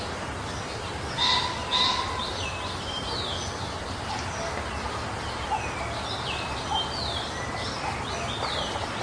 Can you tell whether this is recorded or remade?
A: recorded